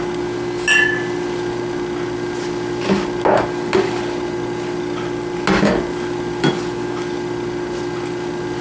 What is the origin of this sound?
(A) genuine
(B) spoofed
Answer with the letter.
A